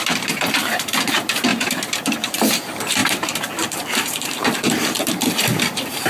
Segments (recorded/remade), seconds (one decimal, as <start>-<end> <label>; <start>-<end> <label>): 0.0-6.1 remade